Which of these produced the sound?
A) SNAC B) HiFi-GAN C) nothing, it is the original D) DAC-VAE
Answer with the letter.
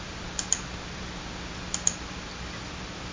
C